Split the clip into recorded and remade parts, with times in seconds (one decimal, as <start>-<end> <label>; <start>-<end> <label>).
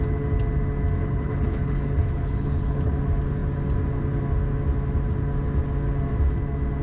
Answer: 0.0-1.0 recorded; 1.0-2.9 remade; 2.9-6.8 recorded